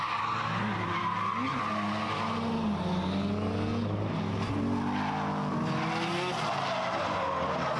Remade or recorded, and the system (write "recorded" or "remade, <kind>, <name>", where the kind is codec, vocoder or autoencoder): recorded